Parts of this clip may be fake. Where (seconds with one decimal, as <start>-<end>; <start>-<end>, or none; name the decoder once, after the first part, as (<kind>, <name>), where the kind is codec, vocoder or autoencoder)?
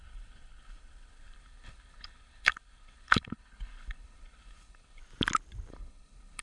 0.0-5.0 (codec, HILCodec); 5.7-6.4